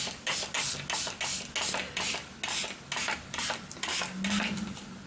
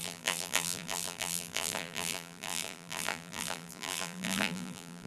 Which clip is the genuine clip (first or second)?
first